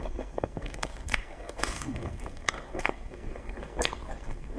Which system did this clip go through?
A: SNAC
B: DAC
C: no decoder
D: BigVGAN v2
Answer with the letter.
A